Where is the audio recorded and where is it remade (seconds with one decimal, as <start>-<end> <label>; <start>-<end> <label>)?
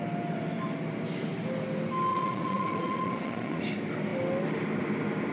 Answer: 0.0-2.1 recorded; 2.1-3.6 remade; 3.6-5.3 recorded